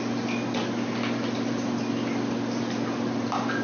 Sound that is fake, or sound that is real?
real